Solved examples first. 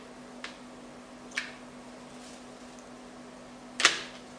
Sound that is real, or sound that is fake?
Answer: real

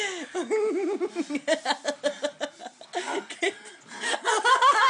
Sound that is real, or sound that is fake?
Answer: real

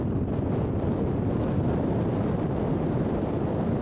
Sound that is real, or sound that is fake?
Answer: real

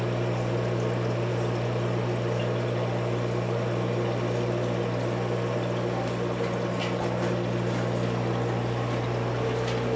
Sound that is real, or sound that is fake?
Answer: real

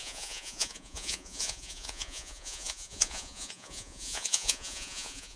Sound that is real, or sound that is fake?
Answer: fake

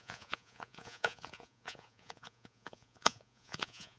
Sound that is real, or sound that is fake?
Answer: fake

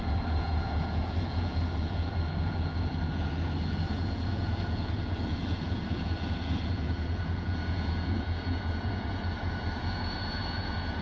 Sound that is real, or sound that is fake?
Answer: fake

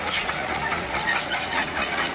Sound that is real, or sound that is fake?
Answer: fake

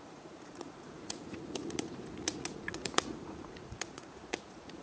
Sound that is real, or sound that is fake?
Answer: fake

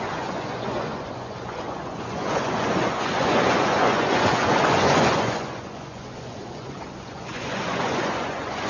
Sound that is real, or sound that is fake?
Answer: fake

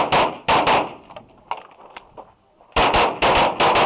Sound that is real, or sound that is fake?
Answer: real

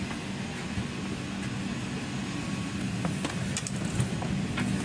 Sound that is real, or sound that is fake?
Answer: real